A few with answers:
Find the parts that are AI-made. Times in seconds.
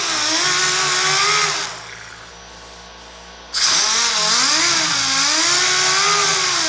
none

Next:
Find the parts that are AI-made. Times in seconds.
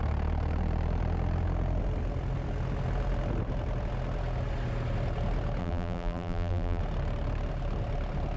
5.6-6.8 (vocoder, BigVGAN v2)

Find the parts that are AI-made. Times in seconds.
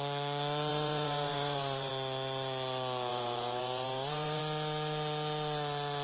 0.7-1.9 (vocoder, BigVGAN v2); 3.1-4.4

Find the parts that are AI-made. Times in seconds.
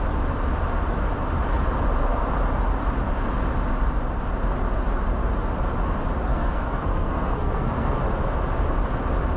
6.3-8.0 (codec, SNAC)